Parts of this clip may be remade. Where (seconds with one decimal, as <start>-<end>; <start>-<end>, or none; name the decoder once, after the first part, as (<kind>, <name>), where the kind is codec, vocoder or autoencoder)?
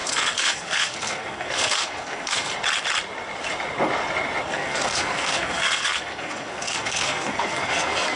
0.0-2.5 (codec, SNAC); 4.5-8.2